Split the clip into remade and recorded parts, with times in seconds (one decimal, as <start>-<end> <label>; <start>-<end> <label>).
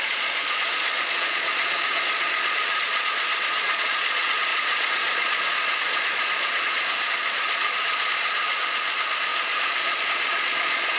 0.0-11.0 remade